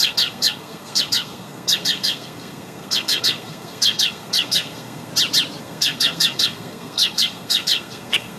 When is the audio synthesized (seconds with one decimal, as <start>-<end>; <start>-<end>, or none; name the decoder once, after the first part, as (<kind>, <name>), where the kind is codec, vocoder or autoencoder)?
0.0-5.1 (codec, SNAC); 5.6-8.4